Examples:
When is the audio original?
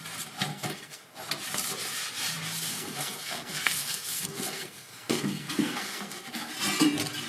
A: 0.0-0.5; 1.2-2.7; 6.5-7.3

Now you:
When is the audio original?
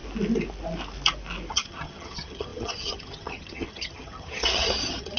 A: 0.0-1.5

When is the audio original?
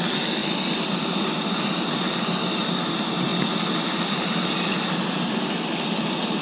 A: 0.0-6.4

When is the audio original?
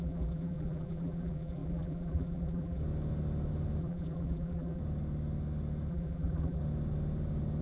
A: 2.8-3.8; 4.8-5.9; 6.6-7.6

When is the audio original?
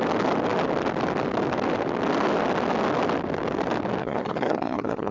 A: 0.0-4.0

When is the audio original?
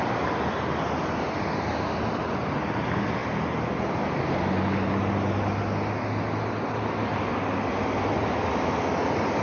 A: 0.0-9.4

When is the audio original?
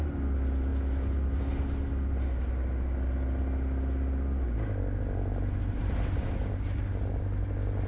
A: 0.0-7.9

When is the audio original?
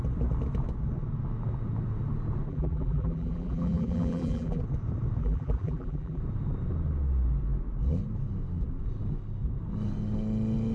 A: 0.0-2.5; 4.6-5.2; 6.2-10.7